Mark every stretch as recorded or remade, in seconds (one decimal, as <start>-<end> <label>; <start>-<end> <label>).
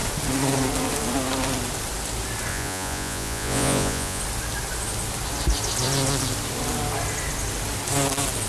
0.0-2.5 recorded; 2.5-4.2 remade; 4.2-8.5 recorded